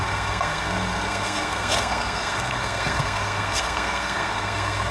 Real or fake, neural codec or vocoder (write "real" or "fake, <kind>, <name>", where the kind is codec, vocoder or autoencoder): fake, codec, SNAC